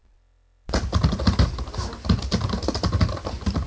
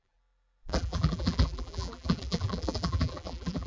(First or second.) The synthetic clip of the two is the second